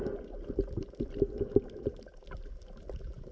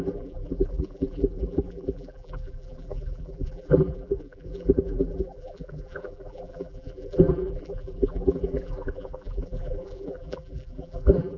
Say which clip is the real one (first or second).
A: first